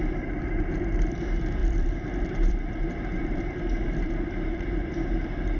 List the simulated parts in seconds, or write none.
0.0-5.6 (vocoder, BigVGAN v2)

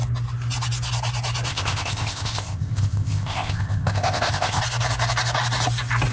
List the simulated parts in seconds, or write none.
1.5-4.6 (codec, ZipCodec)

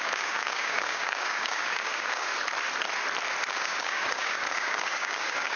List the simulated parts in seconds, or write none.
0.0-2.3 (codec, DAC); 3.5-5.6